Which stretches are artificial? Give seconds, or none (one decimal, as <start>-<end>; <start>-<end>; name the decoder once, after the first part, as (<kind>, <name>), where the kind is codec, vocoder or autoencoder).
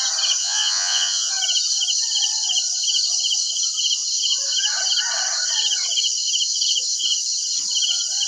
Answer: 0.4-1.3 (vocoder, Vocos)